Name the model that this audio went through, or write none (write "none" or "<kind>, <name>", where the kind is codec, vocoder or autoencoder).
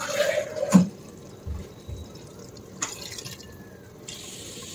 vocoder, BigVGAN v2